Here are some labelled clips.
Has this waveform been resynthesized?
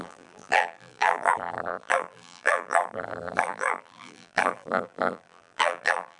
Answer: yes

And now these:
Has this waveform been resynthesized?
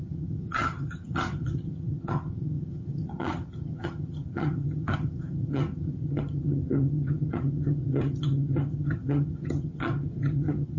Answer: yes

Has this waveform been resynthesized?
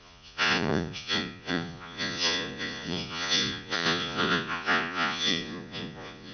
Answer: yes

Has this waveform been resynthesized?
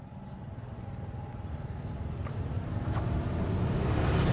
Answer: no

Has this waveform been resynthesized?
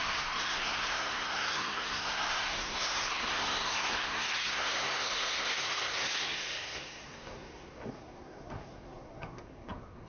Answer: yes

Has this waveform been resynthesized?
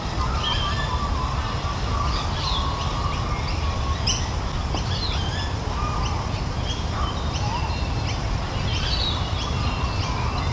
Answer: no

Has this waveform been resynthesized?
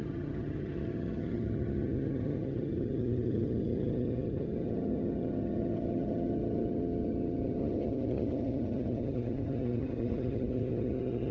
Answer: yes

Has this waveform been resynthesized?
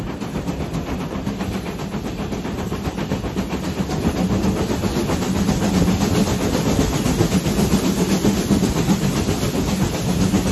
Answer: no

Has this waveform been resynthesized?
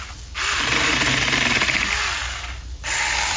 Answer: no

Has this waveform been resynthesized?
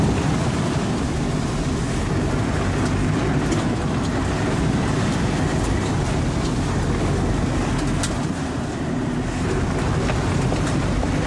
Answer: no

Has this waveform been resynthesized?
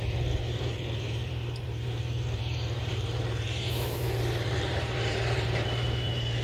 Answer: yes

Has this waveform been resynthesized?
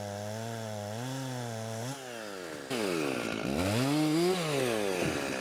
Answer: no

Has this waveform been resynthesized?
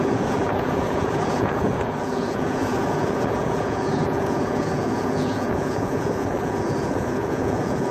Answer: yes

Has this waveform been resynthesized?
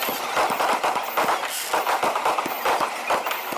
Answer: no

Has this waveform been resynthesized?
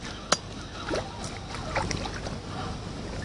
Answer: no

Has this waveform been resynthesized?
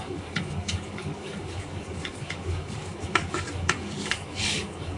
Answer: yes